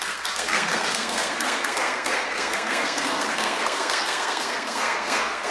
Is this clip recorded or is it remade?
remade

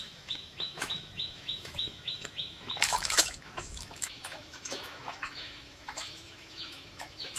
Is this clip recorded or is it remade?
remade